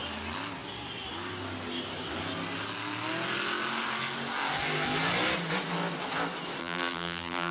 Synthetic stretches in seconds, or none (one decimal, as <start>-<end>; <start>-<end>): 6.6-7.5